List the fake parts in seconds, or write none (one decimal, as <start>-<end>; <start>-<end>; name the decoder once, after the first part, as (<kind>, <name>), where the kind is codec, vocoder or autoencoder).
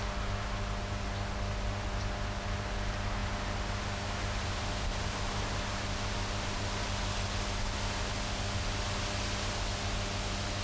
none